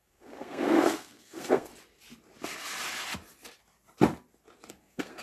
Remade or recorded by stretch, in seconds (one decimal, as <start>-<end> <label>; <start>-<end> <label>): 0.0-1.7 remade; 1.7-4.8 recorded; 4.8-5.2 remade